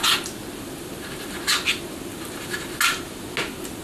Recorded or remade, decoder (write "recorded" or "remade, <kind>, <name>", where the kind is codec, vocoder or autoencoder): recorded